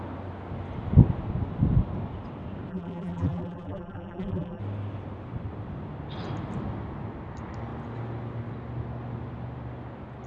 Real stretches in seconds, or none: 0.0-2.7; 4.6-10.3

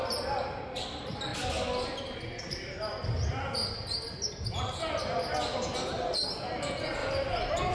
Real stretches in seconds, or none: 0.0-7.0

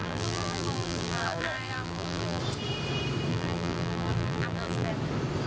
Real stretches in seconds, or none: 2.4-3.3; 4.9-5.5